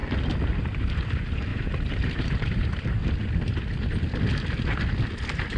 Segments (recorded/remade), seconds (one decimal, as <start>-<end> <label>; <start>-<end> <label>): 0.0-0.6 recorded; 0.6-3.0 remade; 3.0-5.6 recorded